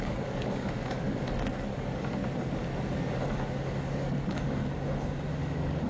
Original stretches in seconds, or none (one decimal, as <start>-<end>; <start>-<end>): 2.2-3.2; 4.6-5.3